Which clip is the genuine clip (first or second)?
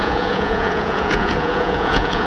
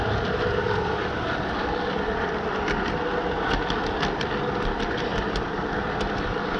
second